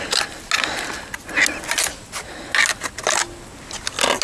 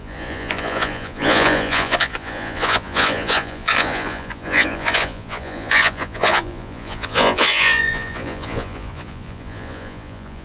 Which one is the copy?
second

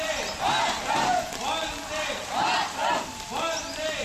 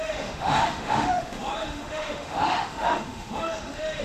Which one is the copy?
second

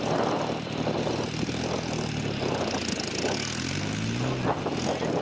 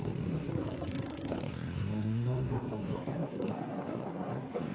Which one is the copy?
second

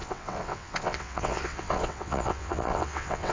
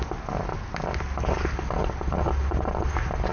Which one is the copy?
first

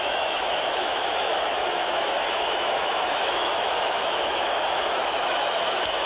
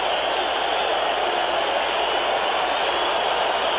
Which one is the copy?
first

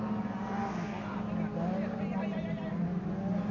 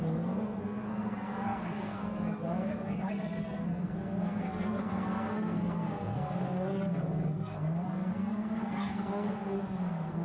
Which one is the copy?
second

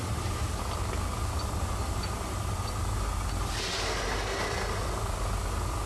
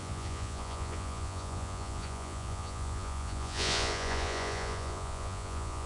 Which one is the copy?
second